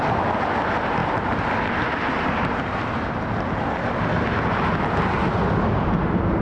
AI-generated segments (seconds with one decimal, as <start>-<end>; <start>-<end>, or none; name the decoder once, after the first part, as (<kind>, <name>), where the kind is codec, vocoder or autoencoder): none

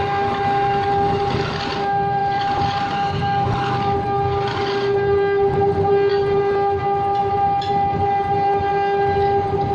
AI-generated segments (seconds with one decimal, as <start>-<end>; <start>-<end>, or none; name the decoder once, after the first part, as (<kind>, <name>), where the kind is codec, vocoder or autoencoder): 2.2-2.8 (vocoder, BigVGAN v2)